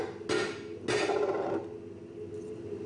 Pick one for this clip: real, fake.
real